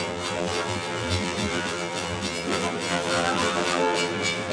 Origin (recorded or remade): remade